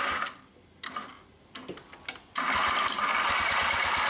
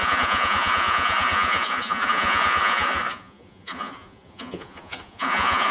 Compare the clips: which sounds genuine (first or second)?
first